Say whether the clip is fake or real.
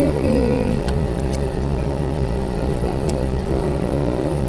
fake